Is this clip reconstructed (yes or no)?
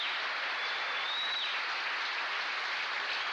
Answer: no